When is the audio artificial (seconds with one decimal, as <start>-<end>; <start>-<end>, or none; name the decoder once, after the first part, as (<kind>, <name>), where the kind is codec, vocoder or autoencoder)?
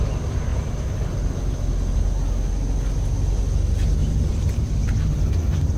4.0-4.8 (vocoder, BigVGAN v2)